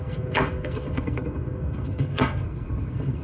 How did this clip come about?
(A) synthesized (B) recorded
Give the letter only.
A